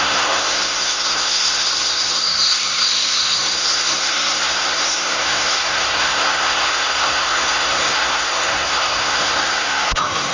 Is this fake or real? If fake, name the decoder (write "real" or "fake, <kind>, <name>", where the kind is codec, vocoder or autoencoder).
fake, codec, SNAC